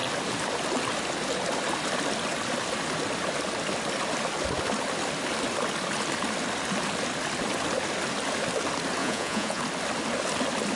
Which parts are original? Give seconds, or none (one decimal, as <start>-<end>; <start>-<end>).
0.0-9.0; 9.6-10.8